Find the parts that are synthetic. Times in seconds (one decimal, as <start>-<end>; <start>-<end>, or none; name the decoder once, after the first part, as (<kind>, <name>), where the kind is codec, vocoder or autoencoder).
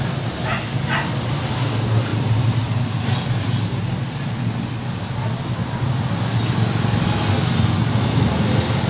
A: none